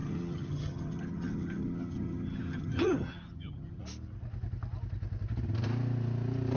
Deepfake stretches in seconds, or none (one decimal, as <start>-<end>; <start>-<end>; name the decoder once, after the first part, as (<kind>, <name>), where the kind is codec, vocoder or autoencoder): 0.0-3.8 (vocoder, HiFi-GAN)